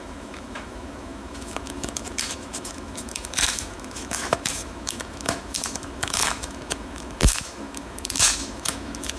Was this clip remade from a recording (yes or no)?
yes